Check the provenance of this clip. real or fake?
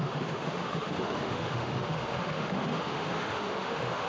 fake